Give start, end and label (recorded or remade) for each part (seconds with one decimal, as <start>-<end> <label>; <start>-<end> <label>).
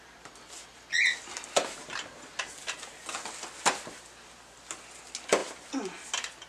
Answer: 0.0-5.4 recorded; 5.4-6.1 remade; 6.1-6.5 recorded